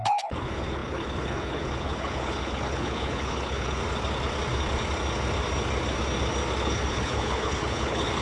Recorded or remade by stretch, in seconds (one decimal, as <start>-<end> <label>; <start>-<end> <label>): 0.0-3.8 remade; 3.8-6.6 recorded; 6.6-8.2 remade